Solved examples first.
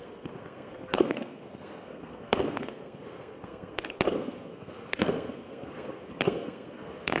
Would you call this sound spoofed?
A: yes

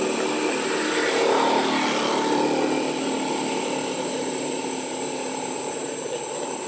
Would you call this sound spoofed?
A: no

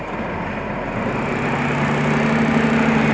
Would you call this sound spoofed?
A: no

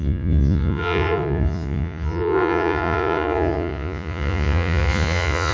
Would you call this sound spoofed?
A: yes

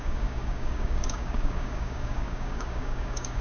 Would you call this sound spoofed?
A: yes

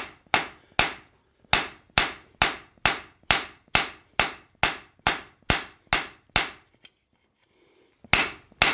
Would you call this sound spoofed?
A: no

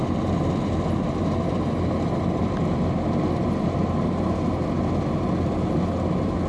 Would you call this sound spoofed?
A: no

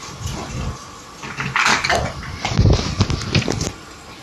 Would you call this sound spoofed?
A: no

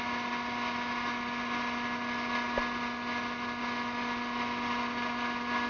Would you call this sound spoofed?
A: no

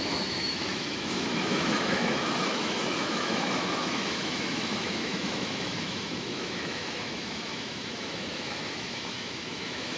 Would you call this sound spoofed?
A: yes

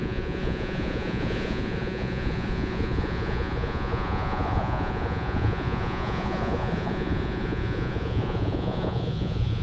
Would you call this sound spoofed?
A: yes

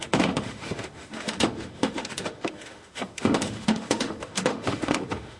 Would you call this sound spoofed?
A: yes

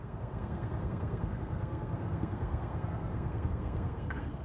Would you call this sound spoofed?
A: yes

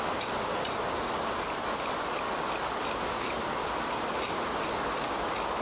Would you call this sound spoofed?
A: no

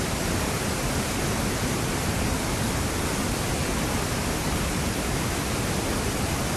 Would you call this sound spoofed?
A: no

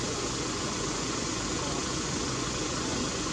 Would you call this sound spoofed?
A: yes